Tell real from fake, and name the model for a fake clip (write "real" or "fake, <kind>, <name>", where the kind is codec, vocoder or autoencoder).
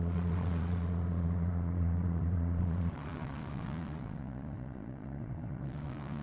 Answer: fake, vocoder, Vocos